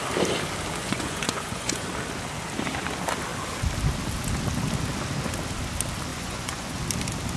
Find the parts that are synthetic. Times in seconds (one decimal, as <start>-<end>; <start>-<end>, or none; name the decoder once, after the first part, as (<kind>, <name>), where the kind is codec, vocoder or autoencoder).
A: 0.8-1.9 (vocoder, Vocos); 6.1-6.8